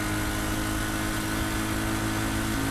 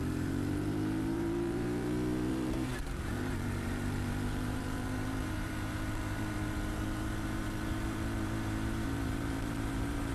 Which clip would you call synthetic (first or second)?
second